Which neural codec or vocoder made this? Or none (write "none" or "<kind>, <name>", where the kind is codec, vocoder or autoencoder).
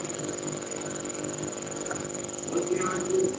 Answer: none